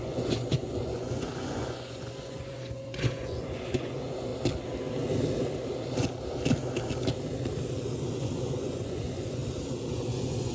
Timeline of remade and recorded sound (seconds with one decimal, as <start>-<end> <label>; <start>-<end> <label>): 0.0-4.3 remade; 4.3-8.0 recorded; 8.0-9.4 remade; 9.4-9.9 recorded; 9.9-10.5 remade